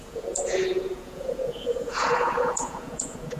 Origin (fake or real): fake